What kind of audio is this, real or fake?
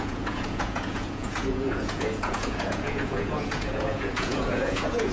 fake